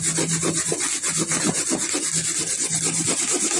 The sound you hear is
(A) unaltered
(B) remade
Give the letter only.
A